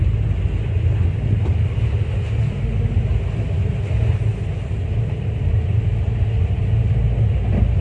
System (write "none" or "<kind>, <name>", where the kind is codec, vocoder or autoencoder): none